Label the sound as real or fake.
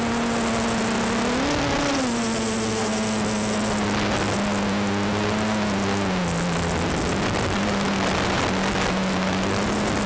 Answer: real